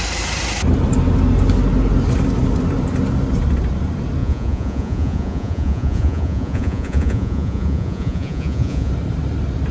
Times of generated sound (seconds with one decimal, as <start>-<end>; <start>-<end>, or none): 4.2-8.9